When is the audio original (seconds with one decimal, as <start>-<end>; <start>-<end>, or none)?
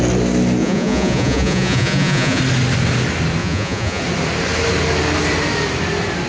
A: 0.0-0.6; 2.4-3.4; 4.0-6.3